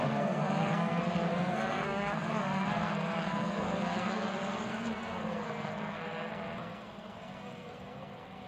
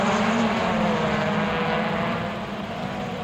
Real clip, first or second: second